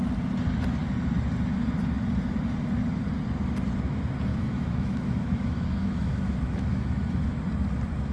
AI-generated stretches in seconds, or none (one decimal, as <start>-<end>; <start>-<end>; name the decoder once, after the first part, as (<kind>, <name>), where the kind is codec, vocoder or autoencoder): 4.3-7.4 (autoencoder, DAC-VAE)